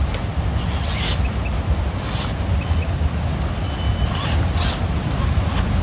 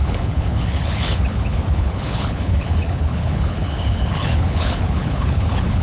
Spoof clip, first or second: second